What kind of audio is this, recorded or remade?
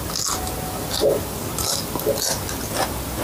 recorded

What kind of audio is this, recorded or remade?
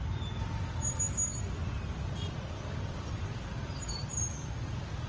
recorded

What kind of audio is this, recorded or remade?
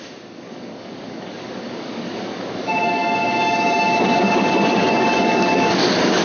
remade